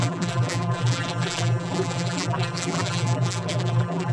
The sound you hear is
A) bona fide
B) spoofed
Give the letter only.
B